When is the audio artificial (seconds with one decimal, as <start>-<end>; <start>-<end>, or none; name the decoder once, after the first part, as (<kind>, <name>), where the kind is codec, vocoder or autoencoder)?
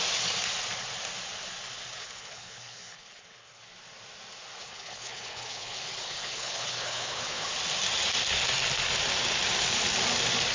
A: 2.0-3.6 (codec, HILCodec); 4.6-7.5